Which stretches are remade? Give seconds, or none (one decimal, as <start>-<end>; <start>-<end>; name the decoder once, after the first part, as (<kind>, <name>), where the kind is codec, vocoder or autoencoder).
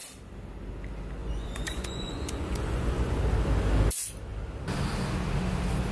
1.2-3.2 (vocoder, Vocos)